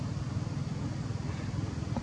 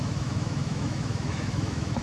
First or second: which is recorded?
first